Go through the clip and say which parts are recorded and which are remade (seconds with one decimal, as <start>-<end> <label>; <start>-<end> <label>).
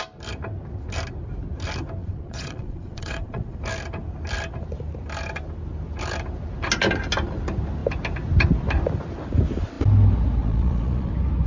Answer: 0.0-2.0 recorded; 2.0-3.6 remade; 3.6-10.4 recorded; 10.4-11.1 remade; 11.1-11.5 recorded